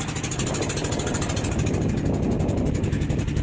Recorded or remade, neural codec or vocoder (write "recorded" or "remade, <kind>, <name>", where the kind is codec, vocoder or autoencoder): recorded